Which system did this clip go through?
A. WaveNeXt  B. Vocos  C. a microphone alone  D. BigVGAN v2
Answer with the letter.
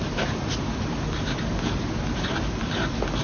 C